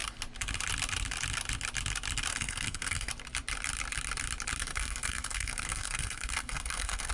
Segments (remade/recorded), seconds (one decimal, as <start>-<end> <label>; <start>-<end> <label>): 0.0-2.3 recorded; 2.3-3.1 remade; 3.1-4.6 recorded; 4.6-7.1 remade